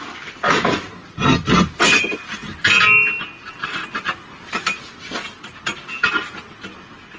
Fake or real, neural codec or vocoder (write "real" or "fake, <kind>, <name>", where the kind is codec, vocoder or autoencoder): real